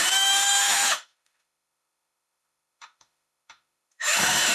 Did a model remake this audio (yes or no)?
yes